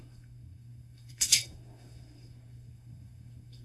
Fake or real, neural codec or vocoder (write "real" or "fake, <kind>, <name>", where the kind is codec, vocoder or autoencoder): fake, codec, SNAC